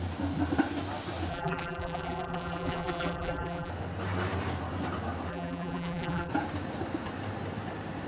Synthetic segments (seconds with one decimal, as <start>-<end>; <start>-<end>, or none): 1.3-3.7; 5.3-6.3